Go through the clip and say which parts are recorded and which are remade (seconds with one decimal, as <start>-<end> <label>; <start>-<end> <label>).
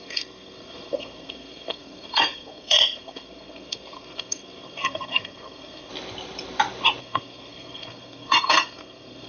0.0-5.9 remade; 5.9-7.0 recorded; 7.0-9.3 remade